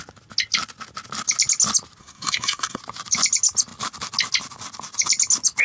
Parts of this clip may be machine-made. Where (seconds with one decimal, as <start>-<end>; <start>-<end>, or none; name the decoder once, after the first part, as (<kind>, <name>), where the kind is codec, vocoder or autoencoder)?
2.0-2.8 (codec, SNAC)